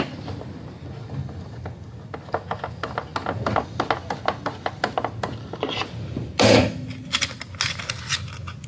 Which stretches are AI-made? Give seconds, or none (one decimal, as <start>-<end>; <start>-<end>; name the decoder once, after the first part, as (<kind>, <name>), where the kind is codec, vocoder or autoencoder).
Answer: none